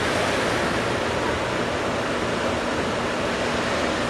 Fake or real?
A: real